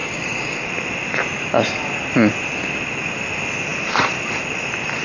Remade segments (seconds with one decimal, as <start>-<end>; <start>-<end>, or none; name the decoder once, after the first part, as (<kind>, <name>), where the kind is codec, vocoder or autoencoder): 0.0-0.7 (codec, DAC)

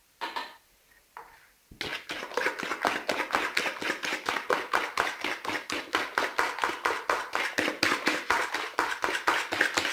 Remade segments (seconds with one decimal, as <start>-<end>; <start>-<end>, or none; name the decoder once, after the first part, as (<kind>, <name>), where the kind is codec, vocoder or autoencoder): none